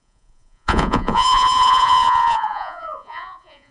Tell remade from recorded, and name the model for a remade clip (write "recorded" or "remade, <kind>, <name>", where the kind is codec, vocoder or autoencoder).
remade, vocoder, Vocos